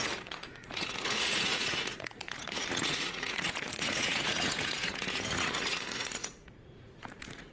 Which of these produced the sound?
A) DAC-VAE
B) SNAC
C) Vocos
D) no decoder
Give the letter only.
C